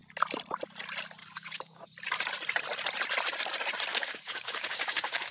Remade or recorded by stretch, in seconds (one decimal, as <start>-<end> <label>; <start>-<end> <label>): 0.0-1.2 recorded; 1.2-1.9 remade; 1.9-3.9 recorded; 3.9-5.3 remade